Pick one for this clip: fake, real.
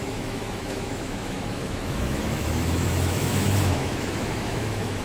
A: fake